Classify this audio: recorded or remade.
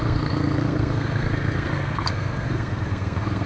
remade